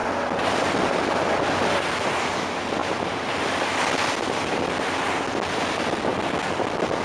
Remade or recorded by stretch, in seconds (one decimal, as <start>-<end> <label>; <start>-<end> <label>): 0.0-2.8 recorded; 2.8-4.7 remade; 4.7-7.0 recorded